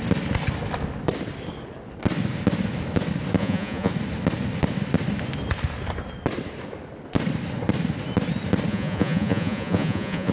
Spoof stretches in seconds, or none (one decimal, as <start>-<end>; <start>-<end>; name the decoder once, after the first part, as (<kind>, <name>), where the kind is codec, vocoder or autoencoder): 3.4-3.9 (vocoder, Vocos); 8.7-10.3